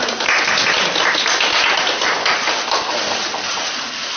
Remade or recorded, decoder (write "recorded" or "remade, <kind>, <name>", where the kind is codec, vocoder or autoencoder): recorded